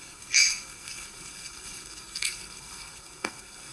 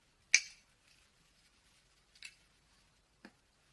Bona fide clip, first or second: second